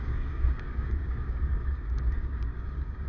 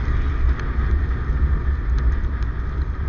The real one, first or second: second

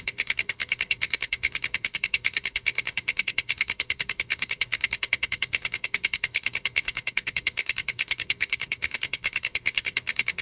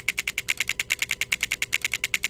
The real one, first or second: second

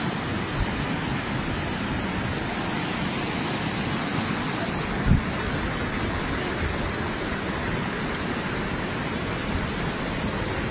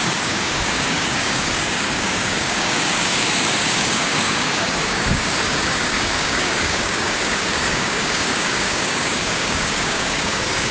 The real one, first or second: first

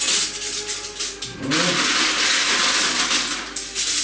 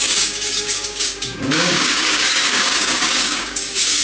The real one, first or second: first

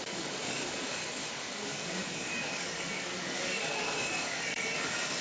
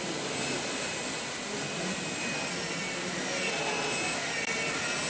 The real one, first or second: second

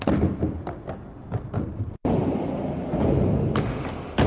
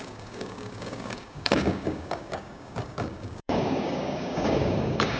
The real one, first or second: first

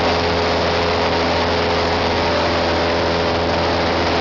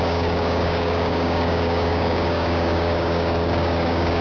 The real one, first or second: first